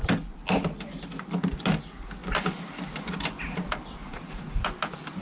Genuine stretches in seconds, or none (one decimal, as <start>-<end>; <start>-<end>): 0.0-4.1; 4.6-5.2